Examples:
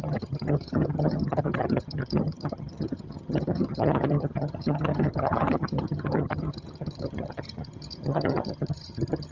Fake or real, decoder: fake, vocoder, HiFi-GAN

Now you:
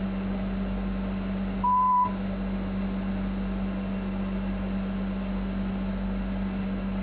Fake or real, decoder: real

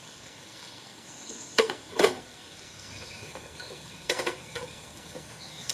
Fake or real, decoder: fake, codec, SNAC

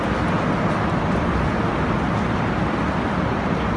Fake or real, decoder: real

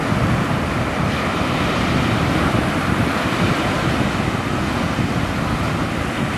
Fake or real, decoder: real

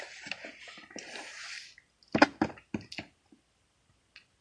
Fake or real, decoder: real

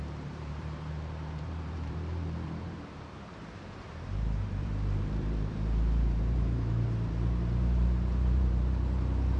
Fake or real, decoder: fake, vocoder, BigVGAN v2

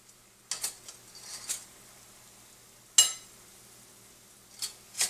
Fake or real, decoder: real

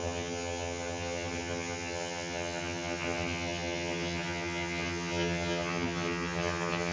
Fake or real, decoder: fake, vocoder, HiFi-GAN